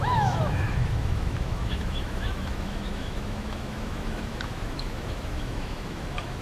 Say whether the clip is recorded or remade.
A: remade